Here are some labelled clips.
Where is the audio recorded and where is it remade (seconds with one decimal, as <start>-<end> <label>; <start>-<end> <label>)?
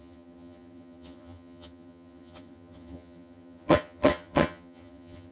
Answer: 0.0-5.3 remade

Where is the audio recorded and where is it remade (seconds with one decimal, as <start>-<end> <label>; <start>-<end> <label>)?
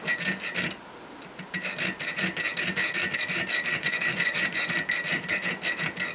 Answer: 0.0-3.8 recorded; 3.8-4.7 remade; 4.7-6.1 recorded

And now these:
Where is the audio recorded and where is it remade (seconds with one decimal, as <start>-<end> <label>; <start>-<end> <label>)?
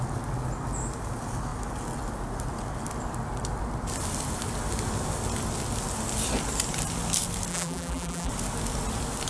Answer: 0.0-7.5 recorded; 7.5-8.3 remade; 8.3-9.3 recorded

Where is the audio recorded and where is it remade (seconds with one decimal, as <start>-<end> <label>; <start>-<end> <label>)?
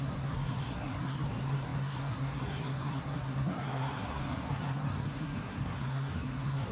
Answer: 0.0-6.7 remade